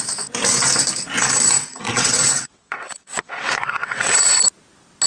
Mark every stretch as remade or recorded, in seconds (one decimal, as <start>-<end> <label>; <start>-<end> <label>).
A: 0.0-1.6 recorded; 1.6-4.4 remade; 4.4-5.1 recorded

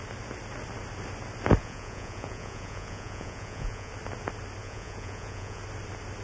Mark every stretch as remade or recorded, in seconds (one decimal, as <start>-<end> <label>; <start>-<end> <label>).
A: 0.0-1.6 recorded; 1.6-3.9 remade; 3.9-4.6 recorded; 4.6-5.6 remade; 5.6-6.2 recorded